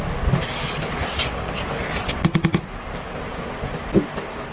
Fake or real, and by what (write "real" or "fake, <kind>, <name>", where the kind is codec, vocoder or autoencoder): real